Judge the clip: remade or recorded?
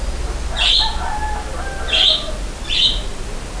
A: recorded